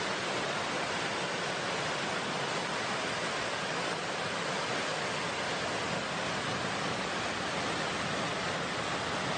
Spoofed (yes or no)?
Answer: no